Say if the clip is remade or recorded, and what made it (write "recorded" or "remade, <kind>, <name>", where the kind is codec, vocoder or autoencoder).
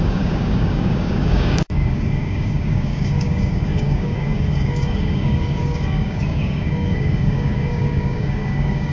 remade, codec, DAC